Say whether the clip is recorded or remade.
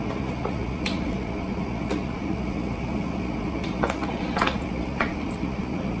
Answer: remade